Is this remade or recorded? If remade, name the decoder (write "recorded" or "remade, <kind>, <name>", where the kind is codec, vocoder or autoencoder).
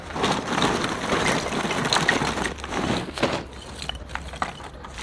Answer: recorded